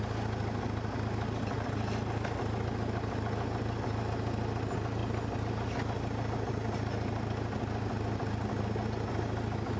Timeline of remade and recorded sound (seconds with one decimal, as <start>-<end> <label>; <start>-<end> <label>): 0.0-9.8 recorded